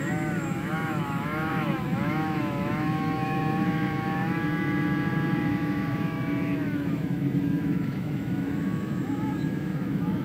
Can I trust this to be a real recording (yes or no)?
no